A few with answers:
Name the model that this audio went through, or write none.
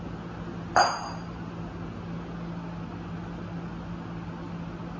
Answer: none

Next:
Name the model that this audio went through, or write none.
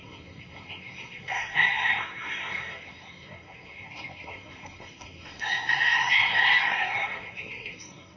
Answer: codec, SNAC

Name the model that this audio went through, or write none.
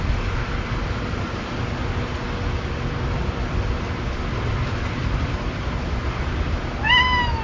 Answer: none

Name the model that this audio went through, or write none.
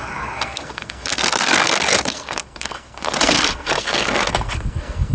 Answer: codec, SNAC